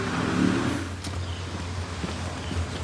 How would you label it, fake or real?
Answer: real